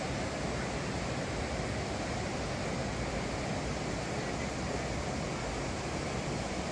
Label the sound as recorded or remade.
recorded